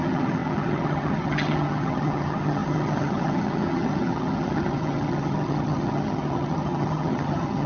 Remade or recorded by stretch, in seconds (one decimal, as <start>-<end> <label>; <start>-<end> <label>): 0.0-7.7 remade